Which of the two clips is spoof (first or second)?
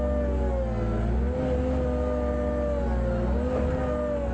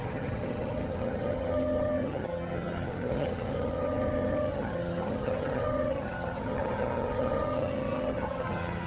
second